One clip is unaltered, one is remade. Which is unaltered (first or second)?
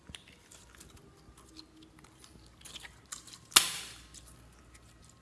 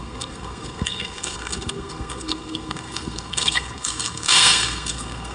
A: first